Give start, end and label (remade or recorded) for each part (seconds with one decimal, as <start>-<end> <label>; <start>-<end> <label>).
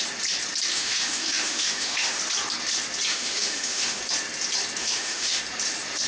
0.0-0.7 recorded; 0.7-2.2 remade; 2.2-3.1 recorded; 3.1-4.0 remade; 4.0-4.8 recorded; 4.8-5.4 remade; 5.4-6.1 recorded